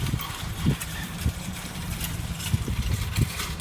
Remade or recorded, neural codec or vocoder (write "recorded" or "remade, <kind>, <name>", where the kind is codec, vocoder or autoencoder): remade, vocoder, BigVGAN v2